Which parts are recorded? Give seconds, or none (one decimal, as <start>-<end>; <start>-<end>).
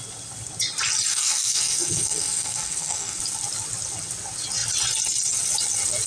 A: 0.0-1.1; 3.2-6.1